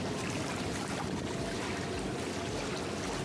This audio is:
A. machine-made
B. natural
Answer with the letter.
B